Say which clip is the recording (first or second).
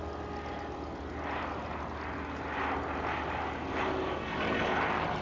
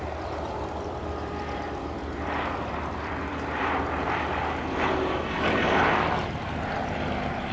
first